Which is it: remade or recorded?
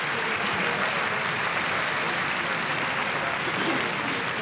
recorded